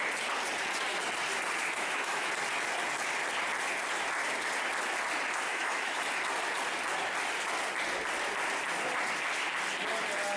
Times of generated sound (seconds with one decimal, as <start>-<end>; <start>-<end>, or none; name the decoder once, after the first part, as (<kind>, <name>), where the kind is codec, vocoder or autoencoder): 1.6-2.3 (autoencoder, DAC-VAE); 5.5-6.0